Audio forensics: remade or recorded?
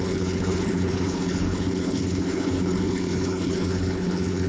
remade